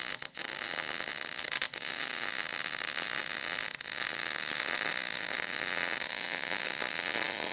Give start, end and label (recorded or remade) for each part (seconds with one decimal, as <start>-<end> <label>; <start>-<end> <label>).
0.0-6.1 recorded; 6.1-6.6 remade; 6.6-7.5 recorded